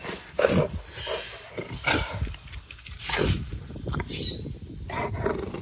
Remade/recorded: recorded